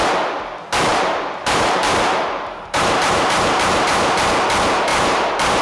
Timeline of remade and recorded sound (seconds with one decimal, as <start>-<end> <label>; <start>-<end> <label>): 0.0-0.9 recorded; 0.9-4.3 remade; 4.3-4.9 recorded; 4.9-5.6 remade